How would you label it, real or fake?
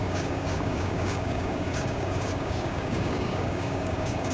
fake